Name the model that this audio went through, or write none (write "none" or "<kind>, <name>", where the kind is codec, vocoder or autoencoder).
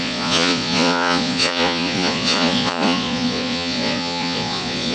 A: vocoder, Vocos